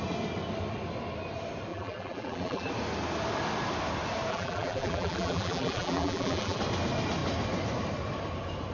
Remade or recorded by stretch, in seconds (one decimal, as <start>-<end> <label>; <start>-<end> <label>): 0.0-1.7 recorded; 1.7-2.7 remade; 2.7-4.3 recorded; 4.3-6.6 remade; 6.6-8.7 recorded